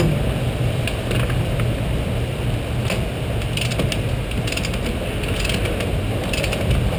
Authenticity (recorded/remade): recorded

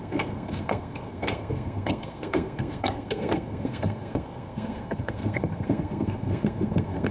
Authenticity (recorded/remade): remade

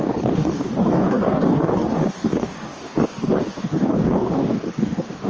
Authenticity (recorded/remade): remade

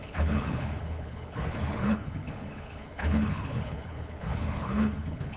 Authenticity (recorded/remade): remade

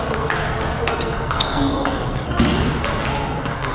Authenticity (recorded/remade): remade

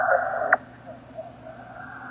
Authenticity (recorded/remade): recorded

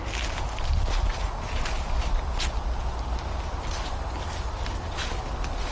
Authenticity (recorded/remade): recorded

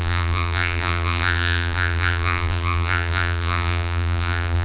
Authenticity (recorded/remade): remade